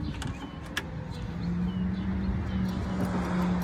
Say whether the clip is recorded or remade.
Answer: recorded